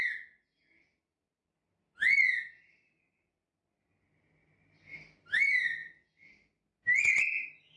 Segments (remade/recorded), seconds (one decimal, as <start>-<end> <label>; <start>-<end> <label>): 0.0-0.9 recorded; 0.9-2.2 remade; 2.2-5.8 recorded; 5.8-7.0 remade; 7.0-7.8 recorded